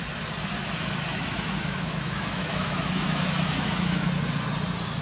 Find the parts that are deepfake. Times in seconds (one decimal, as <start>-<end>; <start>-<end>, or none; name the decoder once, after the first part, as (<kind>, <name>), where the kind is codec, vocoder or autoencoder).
1.1-4.1 (autoencoder, DAC-VAE)